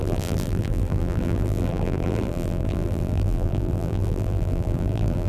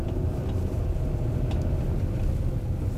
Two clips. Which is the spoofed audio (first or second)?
first